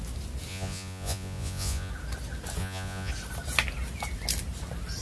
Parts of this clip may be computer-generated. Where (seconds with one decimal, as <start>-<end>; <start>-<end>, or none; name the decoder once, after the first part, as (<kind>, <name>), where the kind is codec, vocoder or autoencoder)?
0.5-1.9 (vocoder, Vocos); 2.6-3.1